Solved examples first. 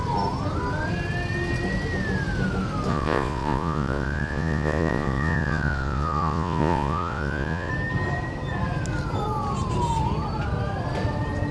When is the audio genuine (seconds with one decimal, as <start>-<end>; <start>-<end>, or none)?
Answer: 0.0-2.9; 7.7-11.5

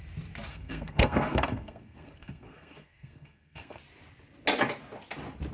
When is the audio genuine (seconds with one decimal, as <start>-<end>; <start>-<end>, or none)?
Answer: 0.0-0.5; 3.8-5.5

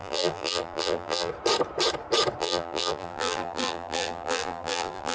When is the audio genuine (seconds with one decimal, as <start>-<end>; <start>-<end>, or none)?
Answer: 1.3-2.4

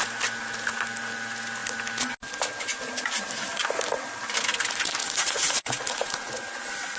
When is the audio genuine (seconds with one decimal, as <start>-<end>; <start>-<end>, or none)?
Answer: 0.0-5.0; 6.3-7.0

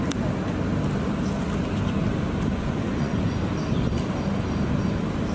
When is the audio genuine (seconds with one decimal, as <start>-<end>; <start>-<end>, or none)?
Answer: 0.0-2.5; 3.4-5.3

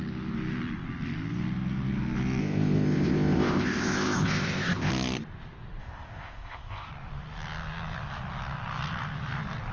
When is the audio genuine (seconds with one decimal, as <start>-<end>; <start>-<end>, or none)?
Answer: 0.0-2.4; 4.9-5.8; 6.9-9.7

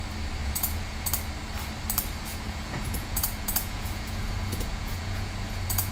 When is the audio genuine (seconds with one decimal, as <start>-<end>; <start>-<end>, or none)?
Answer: 0.0-0.4; 1.1-2.3

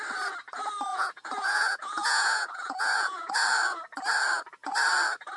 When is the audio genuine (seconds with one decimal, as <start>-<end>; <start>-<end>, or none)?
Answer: 0.0-0.9; 3.3-5.4